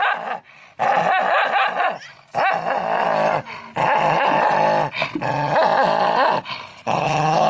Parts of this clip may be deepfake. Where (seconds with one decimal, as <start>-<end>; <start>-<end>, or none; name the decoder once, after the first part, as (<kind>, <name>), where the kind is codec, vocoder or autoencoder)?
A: 6.7-7.5 (codec, HILCodec)